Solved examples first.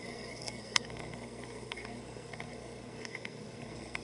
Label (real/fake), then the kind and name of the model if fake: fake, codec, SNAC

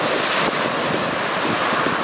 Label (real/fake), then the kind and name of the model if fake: real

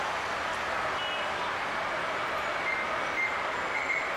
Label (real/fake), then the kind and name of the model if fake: real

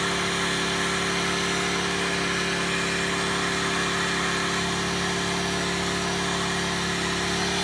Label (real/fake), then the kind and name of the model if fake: real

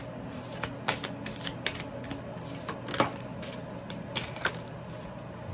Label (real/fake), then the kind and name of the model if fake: real